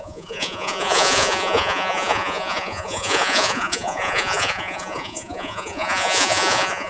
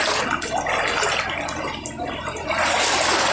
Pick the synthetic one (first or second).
first